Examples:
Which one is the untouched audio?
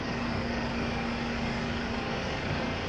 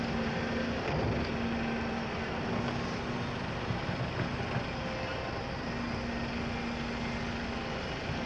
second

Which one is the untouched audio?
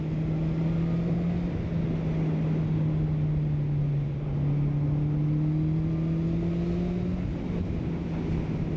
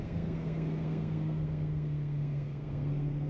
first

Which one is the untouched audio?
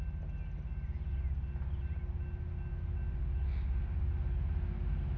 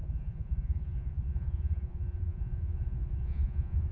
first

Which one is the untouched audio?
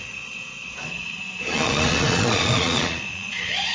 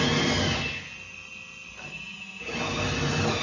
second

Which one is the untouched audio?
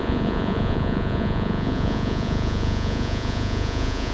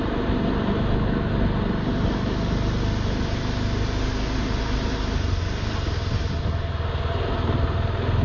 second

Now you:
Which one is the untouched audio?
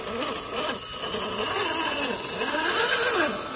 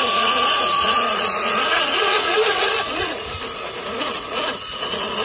first